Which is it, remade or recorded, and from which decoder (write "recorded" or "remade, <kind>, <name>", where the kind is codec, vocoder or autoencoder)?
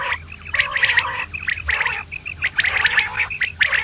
recorded